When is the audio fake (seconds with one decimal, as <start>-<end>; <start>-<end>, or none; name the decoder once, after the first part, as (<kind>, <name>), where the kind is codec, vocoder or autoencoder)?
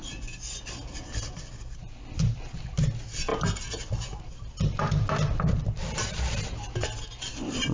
none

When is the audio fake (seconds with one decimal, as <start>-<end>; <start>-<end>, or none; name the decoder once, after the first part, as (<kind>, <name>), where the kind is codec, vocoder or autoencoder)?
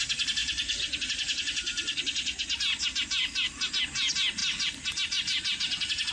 0.4-3.8 (vocoder, BigVGAN v2); 4.4-6.1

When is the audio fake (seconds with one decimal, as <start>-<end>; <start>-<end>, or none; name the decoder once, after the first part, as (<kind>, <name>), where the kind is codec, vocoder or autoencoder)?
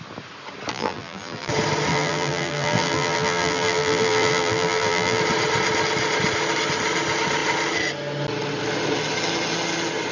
0.7-1.5 (vocoder, BigVGAN v2); 1.9-5.2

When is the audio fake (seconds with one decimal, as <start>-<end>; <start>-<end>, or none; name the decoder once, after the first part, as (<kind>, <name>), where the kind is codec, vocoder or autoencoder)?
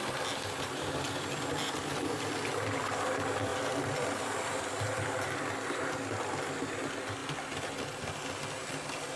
none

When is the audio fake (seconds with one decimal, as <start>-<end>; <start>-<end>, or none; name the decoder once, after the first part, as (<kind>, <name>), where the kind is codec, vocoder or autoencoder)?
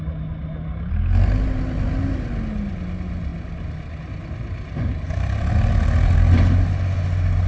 3.3-4.0 (vocoder, BigVGAN v2)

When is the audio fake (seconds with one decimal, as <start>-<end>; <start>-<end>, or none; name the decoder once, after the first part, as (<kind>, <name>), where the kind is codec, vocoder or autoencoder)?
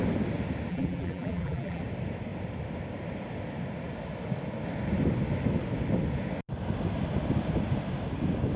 0.7-1.8 (vocoder, BigVGAN v2)